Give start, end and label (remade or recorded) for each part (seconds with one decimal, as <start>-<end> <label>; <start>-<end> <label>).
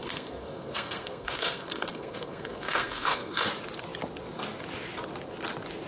0.0-3.5 remade; 3.5-5.9 recorded